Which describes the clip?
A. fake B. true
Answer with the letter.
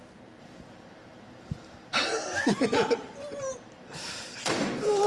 A